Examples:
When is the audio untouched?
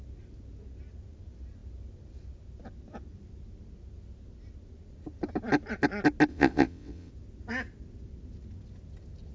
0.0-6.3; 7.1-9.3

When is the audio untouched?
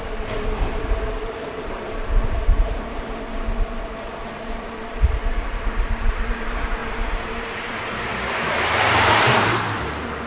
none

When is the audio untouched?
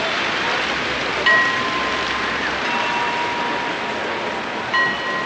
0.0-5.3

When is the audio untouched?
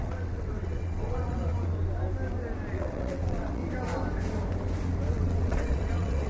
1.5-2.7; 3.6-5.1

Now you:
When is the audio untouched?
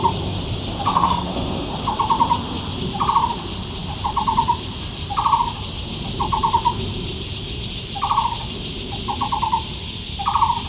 0.0-0.9; 1.7-10.7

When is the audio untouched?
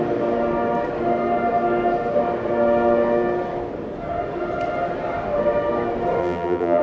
0.0-6.2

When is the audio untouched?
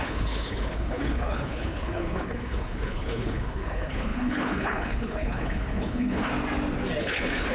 6.3-7.0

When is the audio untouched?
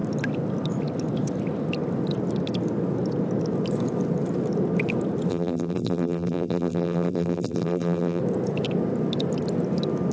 0.0-5.3; 8.2-10.1